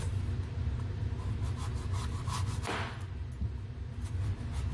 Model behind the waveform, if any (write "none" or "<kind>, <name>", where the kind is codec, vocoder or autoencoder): none